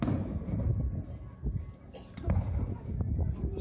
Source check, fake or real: real